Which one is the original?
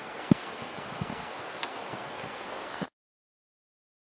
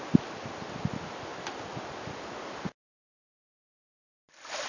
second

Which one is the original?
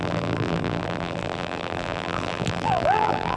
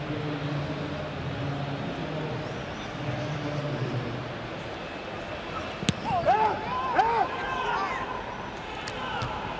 second